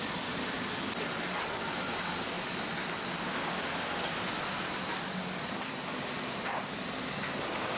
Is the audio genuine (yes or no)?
yes